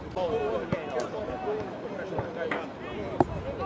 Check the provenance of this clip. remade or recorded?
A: recorded